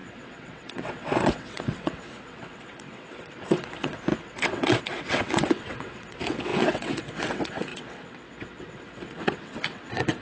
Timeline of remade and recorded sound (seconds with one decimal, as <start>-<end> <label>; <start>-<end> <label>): 0.0-10.2 remade